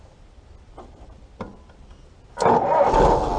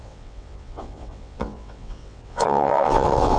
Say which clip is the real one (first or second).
first